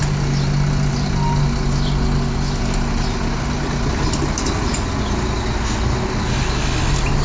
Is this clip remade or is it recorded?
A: recorded